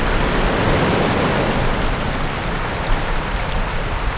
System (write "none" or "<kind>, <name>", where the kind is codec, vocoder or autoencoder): none